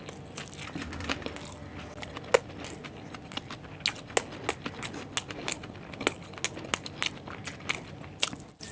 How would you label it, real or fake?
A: real